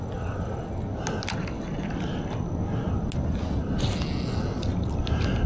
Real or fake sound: real